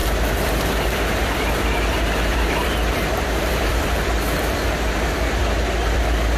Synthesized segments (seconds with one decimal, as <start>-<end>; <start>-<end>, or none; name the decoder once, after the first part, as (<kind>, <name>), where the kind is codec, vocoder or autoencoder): 0.0-1.4 (vocoder, BigVGAN v2); 2.3-6.0